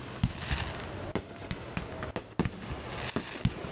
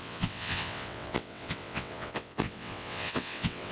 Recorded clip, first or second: first